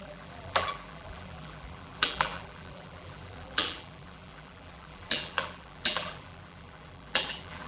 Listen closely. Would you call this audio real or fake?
fake